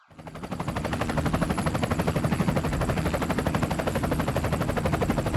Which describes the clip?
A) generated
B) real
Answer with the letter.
A